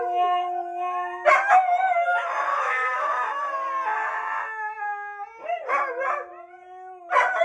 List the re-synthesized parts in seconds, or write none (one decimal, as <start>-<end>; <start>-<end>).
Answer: 2.5-3.1